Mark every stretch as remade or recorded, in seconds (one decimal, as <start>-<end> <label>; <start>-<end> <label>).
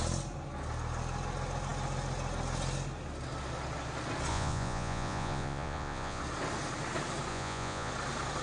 0.0-4.3 recorded; 4.3-6.2 remade; 6.2-7.3 recorded; 7.3-7.9 remade; 7.9-8.4 recorded